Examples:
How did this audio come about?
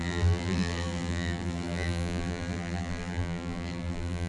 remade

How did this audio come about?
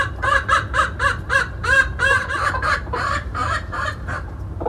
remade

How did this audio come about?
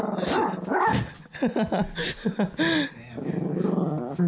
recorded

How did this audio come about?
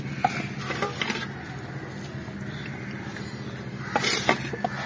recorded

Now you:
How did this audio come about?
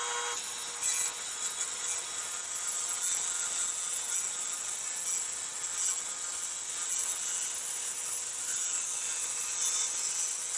recorded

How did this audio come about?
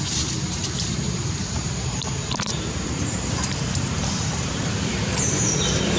remade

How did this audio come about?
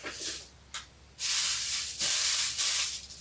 remade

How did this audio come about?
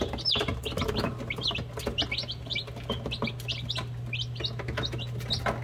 recorded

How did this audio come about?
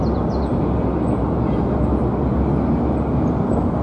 recorded